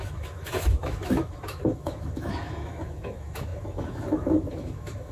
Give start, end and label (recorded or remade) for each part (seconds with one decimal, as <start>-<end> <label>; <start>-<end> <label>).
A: 0.0-5.1 remade